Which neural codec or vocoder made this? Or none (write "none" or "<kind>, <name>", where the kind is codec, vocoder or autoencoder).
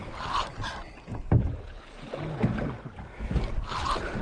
none